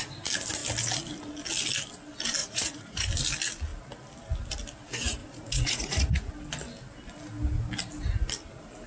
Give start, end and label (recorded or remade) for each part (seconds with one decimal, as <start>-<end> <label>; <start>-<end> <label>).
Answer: 0.0-2.4 recorded; 2.4-3.1 remade; 3.1-5.2 recorded; 5.2-6.3 remade; 6.3-8.9 recorded